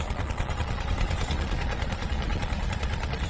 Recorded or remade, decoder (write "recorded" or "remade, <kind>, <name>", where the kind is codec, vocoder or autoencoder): remade, vocoder, Vocos